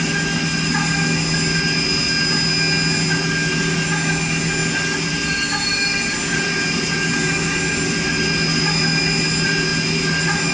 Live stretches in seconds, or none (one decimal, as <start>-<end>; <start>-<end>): 0.0-10.5